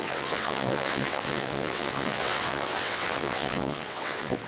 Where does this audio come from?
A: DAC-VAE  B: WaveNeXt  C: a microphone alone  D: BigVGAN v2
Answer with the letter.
B